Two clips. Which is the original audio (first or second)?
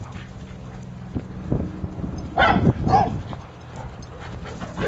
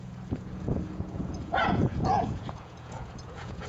first